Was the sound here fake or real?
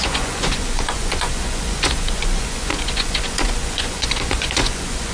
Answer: fake